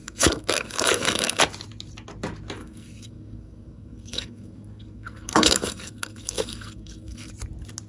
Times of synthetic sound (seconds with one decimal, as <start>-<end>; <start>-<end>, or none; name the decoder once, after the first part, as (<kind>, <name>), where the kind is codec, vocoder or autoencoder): 0.0-1.4 (codec, SNAC); 2.6-7.3